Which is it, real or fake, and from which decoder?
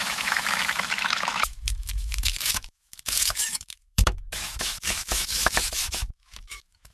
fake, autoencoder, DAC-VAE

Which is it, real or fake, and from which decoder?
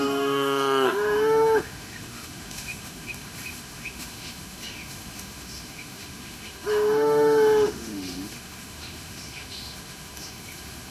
fake, autoencoder, DAC-VAE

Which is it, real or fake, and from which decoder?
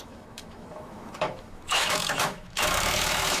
fake, autoencoder, DAC-VAE